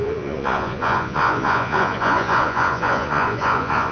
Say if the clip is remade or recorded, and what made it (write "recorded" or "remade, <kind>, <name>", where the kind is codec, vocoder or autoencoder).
remade, vocoder, Vocos